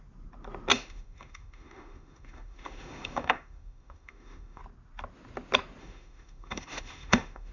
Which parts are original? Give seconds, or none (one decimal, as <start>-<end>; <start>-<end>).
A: 0.0-0.7; 4.6-5.8